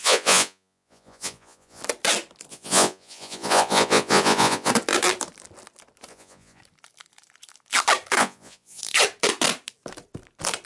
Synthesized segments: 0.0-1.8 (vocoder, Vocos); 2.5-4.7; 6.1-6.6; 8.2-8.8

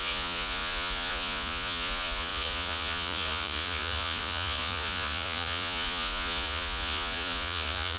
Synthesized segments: 0.0-8.0 (vocoder, Vocos)

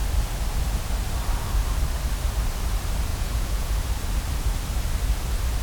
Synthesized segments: 3.1-3.7 (vocoder, Vocos)

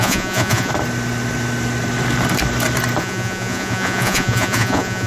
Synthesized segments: 0.0-0.7 (vocoder, Vocos); 3.0-5.1

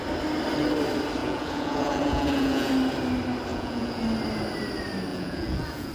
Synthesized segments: 1.2-2.7 (vocoder, Vocos); 3.5-4.0; 5.1-5.9